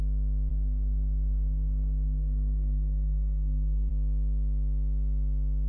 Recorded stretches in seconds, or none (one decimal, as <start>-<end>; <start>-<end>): 0.0-0.5; 3.9-5.7

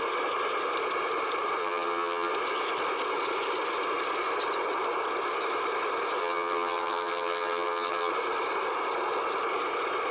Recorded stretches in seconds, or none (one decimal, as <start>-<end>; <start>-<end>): 0.0-1.6; 2.3-6.2; 8.1-10.1

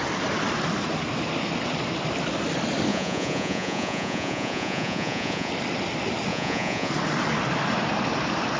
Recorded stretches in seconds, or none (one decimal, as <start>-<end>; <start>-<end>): 0.0-2.9; 5.5-6.3; 6.9-8.6

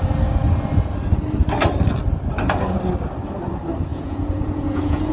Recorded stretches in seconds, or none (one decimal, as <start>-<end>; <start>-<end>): 0.0-3.9